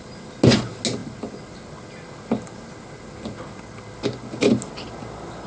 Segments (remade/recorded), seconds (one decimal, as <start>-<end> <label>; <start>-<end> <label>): 0.0-5.5 recorded